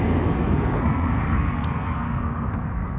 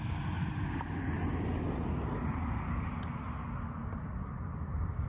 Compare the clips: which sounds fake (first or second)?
first